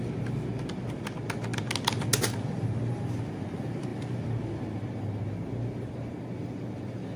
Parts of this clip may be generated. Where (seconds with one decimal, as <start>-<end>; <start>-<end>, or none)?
none